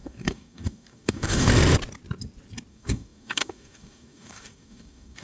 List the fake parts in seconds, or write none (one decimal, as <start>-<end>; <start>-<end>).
0.0-1.5; 2.7-5.2